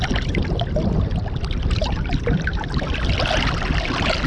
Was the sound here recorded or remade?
recorded